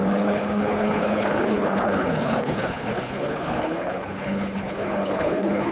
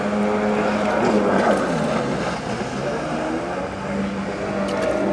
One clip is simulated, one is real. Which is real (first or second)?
second